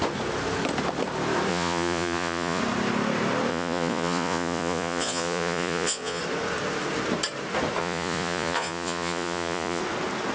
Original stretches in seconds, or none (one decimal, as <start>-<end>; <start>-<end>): 0.0-1.5; 2.6-3.5; 6.2-7.8; 9.8-10.3